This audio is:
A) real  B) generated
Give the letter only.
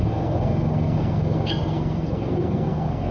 B